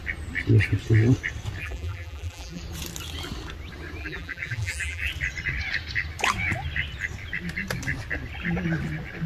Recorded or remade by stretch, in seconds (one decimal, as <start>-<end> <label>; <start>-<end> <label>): 0.0-1.6 recorded; 1.6-2.6 remade; 2.6-4.0 recorded; 4.0-5.1 remade; 5.1-9.3 recorded